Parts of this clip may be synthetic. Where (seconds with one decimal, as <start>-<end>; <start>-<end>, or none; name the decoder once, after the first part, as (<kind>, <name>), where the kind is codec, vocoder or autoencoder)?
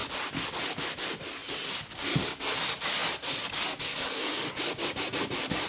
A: 0.0-0.8 (vocoder, BigVGAN v2)